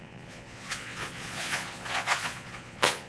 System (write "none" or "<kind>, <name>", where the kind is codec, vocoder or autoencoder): vocoder, Vocos